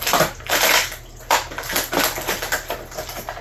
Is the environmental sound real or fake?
real